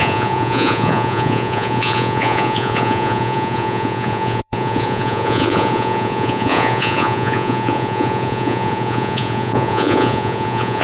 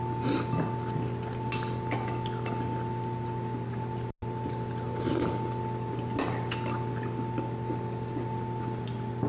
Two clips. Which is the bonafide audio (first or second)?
second